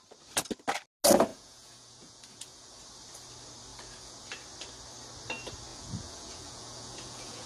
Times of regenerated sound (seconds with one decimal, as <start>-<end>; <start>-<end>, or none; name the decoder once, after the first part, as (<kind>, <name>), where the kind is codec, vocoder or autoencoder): 1.3-2.8 (vocoder, Vocos); 3.7-4.2; 5.7-7.5